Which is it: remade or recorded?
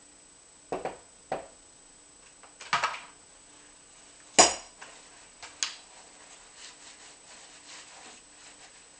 recorded